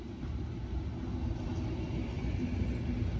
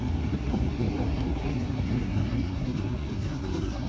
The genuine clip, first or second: first